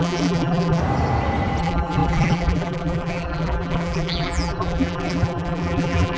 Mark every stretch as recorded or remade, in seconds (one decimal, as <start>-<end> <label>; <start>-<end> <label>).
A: 0.0-0.8 remade; 0.8-1.6 recorded; 1.6-6.2 remade